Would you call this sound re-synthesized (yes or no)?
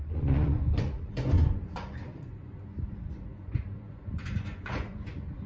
yes